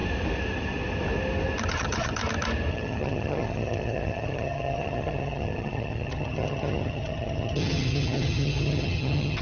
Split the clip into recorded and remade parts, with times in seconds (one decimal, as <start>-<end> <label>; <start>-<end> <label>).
0.0-1.7 recorded; 1.7-2.2 remade; 2.2-2.7 recorded; 2.7-9.4 remade